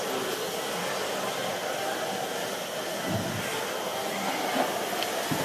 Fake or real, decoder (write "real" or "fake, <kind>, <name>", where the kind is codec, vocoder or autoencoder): real